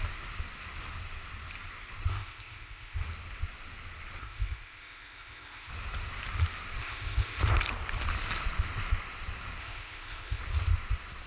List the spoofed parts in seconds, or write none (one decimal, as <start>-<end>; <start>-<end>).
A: 2.1-3.0; 4.2-5.7; 6.8-7.4; 9.6-10.4